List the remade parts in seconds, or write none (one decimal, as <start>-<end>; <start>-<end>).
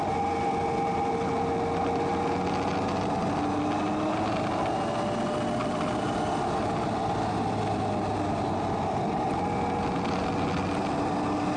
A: none